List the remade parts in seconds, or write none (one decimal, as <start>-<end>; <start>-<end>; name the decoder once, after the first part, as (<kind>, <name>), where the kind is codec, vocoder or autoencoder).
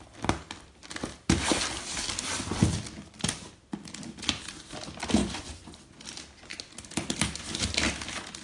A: 5.2-5.8 (vocoder, Vocos)